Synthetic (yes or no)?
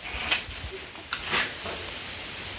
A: no